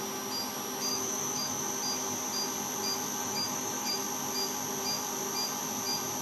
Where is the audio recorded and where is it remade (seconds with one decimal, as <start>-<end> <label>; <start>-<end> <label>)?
0.0-0.9 recorded; 0.9-1.6 remade; 1.6-3.2 recorded; 3.2-4.0 remade; 4.0-6.2 recorded

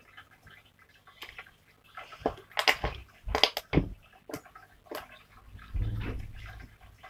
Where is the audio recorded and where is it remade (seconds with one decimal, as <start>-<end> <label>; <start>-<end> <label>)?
0.0-7.1 recorded

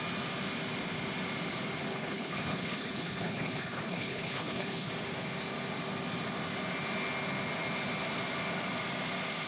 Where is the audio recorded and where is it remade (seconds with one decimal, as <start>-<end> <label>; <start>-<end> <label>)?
0.0-1.9 recorded; 1.9-4.9 remade; 4.9-9.5 recorded

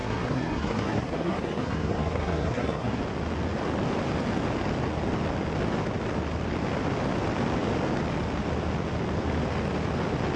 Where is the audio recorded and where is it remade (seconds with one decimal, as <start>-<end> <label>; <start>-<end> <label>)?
0.0-3.0 remade; 3.0-10.4 recorded